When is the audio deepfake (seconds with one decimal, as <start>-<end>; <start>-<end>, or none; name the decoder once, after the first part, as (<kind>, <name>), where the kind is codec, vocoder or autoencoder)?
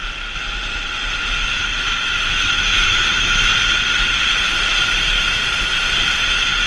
1.7-3.5 (autoencoder, DAC-VAE)